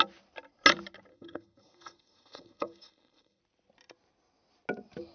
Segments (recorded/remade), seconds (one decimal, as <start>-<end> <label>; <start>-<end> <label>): 0.0-1.1 recorded; 1.1-3.4 remade; 3.4-5.1 recorded